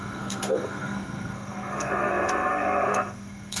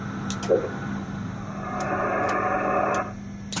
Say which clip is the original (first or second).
second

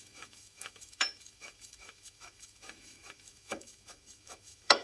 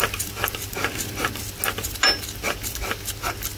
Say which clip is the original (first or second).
second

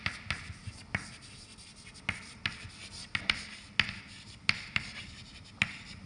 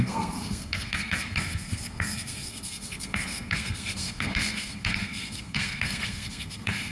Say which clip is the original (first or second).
first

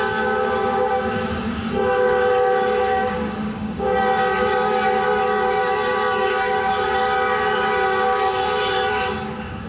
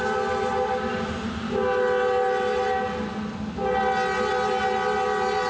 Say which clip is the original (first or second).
second